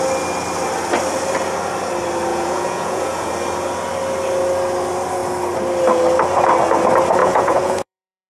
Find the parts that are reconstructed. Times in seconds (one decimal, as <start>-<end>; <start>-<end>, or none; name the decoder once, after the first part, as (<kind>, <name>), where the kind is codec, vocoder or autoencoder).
2.3-3.3 (vocoder, Vocos); 7.2-8.3